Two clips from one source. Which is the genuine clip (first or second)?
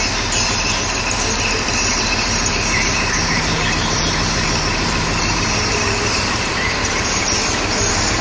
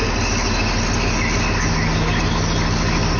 second